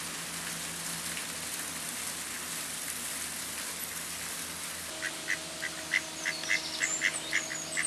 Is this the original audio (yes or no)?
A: yes